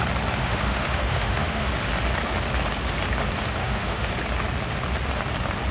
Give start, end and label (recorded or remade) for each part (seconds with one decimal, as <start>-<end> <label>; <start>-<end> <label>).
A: 0.0-0.4 recorded; 0.4-1.7 remade; 1.7-3.6 recorded; 3.6-4.1 remade; 4.1-5.7 recorded